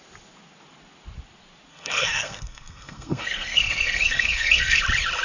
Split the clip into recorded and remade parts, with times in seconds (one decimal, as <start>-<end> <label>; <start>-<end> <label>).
0.0-1.7 recorded; 1.7-4.8 remade; 4.8-5.2 recorded